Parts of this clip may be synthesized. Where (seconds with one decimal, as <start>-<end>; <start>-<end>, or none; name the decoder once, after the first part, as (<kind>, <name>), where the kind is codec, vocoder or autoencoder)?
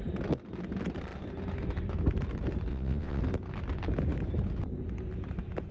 2.7-3.2 (vocoder, WaveNeXt)